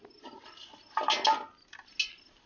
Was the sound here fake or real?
real